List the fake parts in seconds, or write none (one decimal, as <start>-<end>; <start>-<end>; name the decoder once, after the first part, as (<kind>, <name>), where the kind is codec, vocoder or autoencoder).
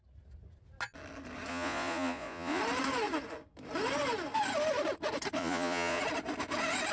1.5-2.6 (vocoder, Vocos); 5.4-6.0